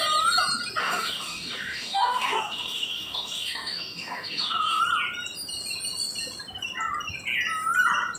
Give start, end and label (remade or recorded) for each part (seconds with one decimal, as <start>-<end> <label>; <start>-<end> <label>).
0.0-0.8 recorded; 0.8-4.8 remade; 4.8-8.2 recorded

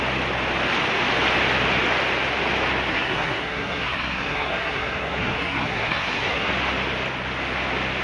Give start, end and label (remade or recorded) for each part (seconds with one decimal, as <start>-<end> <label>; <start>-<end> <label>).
0.0-2.9 recorded; 2.9-6.5 remade; 6.5-8.0 recorded

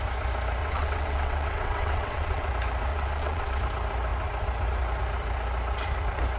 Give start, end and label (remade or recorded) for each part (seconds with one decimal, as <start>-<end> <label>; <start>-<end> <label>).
0.0-0.6 recorded; 0.6-2.5 remade; 2.5-2.9 recorded; 2.9-3.6 remade; 3.6-6.4 recorded